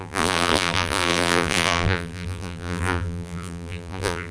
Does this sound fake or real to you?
fake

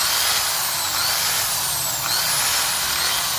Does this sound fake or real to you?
real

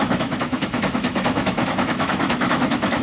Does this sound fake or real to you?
fake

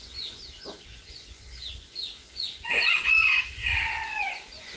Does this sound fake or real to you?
fake